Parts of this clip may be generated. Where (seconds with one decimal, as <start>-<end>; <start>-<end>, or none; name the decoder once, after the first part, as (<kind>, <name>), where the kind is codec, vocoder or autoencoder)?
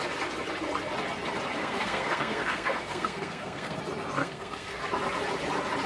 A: 1.6-3.8 (codec, SNAC); 4.2-4.8